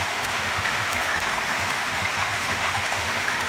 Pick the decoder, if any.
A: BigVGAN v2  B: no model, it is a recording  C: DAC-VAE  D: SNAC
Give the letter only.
C